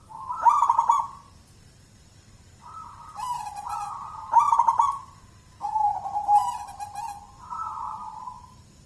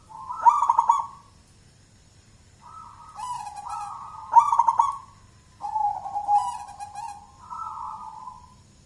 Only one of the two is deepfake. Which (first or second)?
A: first